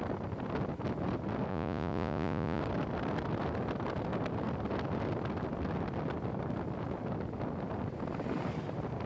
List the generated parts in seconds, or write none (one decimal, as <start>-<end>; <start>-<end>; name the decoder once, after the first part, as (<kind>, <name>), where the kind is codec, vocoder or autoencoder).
1.5-2.6 (vocoder, Vocos)

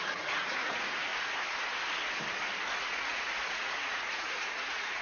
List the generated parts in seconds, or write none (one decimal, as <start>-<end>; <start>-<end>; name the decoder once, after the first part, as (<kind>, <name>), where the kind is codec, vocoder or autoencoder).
0.0-1.1 (vocoder, Vocos); 2.8-5.0

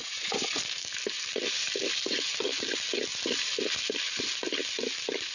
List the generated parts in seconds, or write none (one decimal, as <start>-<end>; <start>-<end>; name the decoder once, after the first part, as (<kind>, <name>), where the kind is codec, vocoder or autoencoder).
0.0-0.6 (vocoder, Vocos)